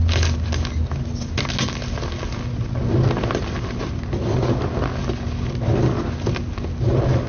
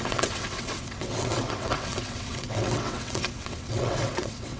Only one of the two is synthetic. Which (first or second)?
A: second